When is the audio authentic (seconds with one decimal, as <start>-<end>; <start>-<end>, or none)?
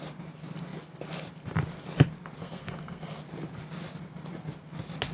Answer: 0.0-2.4; 3.2-5.1